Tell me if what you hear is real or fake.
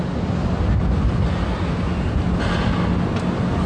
real